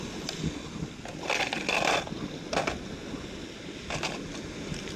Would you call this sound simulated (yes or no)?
no